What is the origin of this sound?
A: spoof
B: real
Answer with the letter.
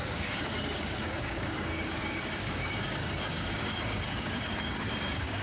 A